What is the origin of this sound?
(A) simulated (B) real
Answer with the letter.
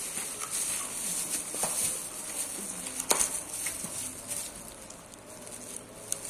B